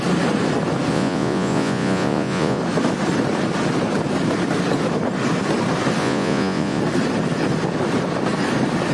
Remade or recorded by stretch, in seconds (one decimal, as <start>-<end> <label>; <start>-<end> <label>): 0.0-0.9 recorded; 0.9-2.6 remade; 2.6-6.0 recorded; 6.0-6.8 remade; 6.8-8.9 recorded